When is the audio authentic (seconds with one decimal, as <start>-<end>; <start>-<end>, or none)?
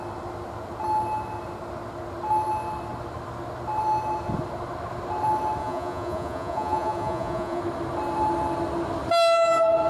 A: 0.0-5.6; 7.6-9.9